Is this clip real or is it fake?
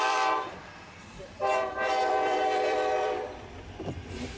fake